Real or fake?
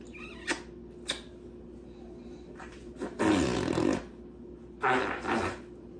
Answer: real